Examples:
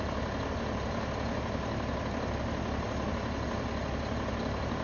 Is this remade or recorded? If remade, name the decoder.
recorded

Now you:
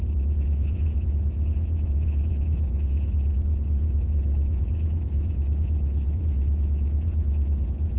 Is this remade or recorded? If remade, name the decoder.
remade, vocoder, Vocos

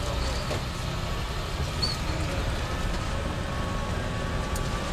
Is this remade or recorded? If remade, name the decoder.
recorded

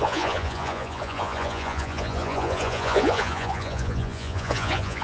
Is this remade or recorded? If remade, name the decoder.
remade, vocoder, Vocos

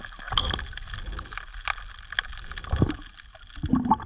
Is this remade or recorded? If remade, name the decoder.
recorded